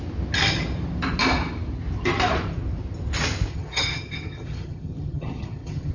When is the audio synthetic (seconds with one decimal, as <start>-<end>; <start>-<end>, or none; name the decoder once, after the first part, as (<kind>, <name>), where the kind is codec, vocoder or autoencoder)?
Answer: 3.5-5.9 (vocoder, HiFi-GAN)

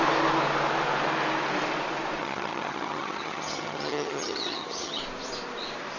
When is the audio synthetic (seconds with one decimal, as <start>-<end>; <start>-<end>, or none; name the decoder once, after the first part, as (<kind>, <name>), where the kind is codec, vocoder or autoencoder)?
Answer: 2.2-5.0 (vocoder, HiFi-GAN)

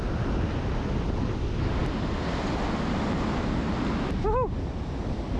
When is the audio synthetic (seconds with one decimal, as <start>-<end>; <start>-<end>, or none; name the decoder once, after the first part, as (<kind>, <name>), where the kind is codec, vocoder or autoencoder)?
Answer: none

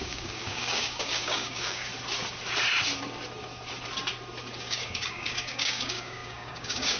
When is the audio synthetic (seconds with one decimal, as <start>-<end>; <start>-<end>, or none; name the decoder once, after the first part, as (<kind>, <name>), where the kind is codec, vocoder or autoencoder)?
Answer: 0.0-1.9 (codec, DAC); 4.6-7.0

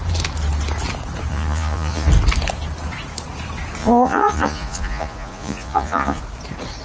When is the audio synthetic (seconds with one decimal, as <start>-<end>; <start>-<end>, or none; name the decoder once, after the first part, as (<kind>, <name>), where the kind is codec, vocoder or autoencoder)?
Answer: 1.3-2.1 (vocoder, Vocos); 3.8-6.2

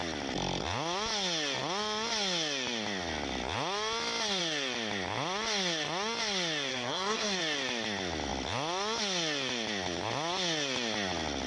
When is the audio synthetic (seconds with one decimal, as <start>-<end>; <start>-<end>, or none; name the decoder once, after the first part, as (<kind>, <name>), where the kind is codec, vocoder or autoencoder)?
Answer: 6.7-7.4 (codec, SNAC)